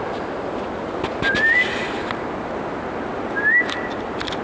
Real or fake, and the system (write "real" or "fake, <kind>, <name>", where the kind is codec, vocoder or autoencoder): real